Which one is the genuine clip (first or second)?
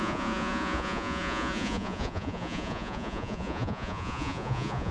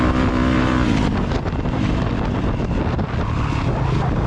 second